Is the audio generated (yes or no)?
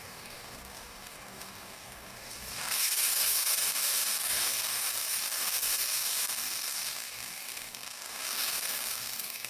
yes